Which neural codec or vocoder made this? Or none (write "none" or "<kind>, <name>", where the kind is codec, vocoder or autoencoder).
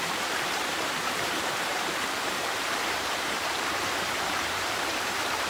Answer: vocoder, BigVGAN v2